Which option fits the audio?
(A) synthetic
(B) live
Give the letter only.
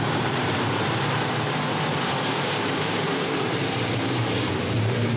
A